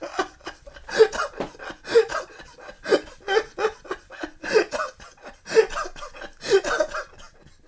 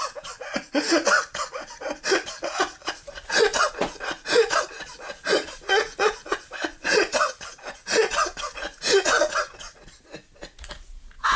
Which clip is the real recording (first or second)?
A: first